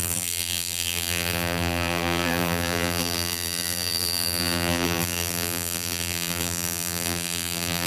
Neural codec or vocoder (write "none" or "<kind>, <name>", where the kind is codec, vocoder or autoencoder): vocoder, BigVGAN v2